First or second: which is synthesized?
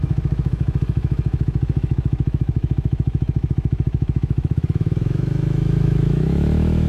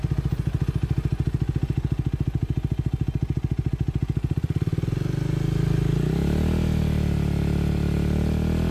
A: first